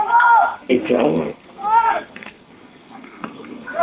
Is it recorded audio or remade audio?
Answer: remade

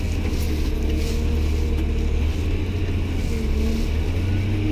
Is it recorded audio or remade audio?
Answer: recorded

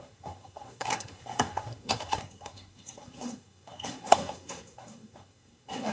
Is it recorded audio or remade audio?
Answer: remade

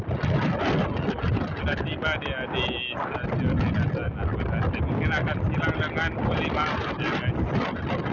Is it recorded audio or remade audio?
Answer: recorded